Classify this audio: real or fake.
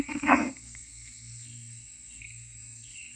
fake